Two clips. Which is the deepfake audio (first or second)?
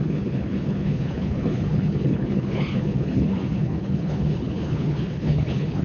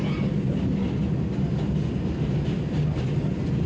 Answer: first